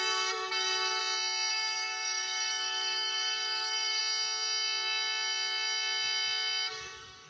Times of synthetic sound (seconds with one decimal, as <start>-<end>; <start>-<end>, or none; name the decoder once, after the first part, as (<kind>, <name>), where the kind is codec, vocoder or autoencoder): 0.0-1.0 (codec, DAC); 1.5-4.0; 6.7-7.3